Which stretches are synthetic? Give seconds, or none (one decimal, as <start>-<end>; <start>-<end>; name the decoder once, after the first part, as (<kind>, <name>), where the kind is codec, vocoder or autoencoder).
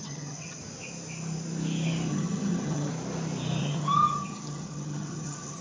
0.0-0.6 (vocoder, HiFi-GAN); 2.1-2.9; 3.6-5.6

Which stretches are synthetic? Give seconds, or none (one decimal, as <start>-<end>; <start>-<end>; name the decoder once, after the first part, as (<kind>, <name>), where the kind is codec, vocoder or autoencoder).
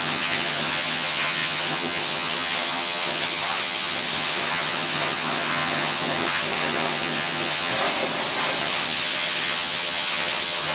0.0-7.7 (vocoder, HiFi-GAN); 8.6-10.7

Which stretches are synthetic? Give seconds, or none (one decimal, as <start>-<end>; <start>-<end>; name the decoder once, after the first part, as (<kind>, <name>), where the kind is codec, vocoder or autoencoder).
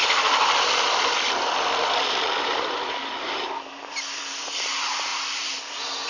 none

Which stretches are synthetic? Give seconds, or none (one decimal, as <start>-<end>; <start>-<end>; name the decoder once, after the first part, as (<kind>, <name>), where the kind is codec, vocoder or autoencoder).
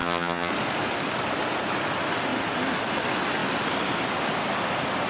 0.0-0.5 (vocoder, HiFi-GAN)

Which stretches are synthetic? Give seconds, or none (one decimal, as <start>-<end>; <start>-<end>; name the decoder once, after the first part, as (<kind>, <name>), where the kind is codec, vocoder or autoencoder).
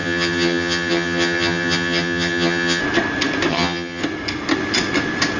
0.0-2.8 (vocoder, HiFi-GAN); 3.5-4.0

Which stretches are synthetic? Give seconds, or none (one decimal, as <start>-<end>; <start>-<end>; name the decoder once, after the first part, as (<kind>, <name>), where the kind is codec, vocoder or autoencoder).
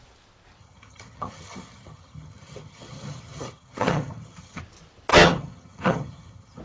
0.6-4.6 (vocoder, HiFi-GAN); 5.1-6.6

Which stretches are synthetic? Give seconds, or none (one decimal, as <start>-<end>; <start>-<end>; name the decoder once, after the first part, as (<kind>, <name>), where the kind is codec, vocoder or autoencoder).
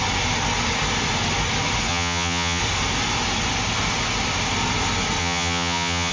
1.9-2.6 (vocoder, HiFi-GAN); 5.2-6.1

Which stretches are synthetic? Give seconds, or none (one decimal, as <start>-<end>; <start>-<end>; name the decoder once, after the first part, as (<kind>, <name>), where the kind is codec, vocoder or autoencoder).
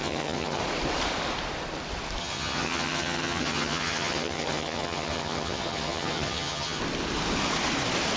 0.0-0.6 (vocoder, HiFi-GAN); 2.2-6.8